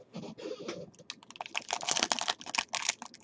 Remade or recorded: recorded